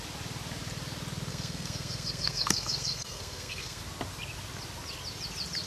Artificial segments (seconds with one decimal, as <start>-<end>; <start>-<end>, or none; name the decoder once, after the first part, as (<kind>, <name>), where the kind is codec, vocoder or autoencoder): 1.3-3.8 (codec, SNAC)